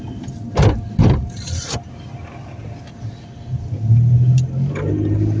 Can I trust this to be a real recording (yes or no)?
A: yes